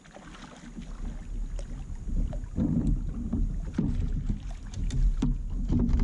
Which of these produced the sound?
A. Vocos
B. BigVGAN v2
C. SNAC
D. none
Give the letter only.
D